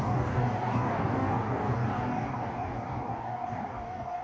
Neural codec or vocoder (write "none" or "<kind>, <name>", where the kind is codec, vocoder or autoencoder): codec, DAC